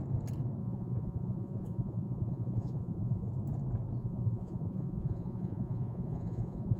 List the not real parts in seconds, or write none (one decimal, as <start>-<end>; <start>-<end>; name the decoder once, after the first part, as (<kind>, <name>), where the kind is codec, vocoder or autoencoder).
0.6-3.3 (vocoder, Vocos); 4.0-6.8